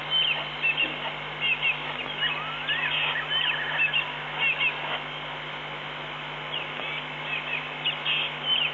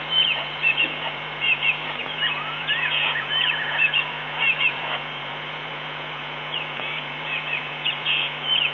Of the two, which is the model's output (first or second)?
second